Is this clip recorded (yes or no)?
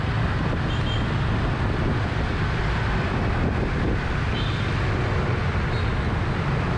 no